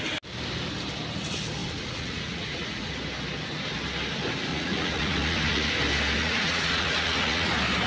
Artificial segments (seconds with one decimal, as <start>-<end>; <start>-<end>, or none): 1.6-3.0; 4.5-5.7; 6.2-7.5